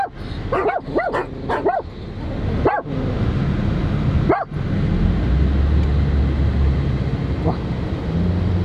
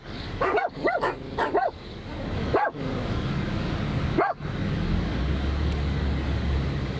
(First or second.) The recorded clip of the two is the first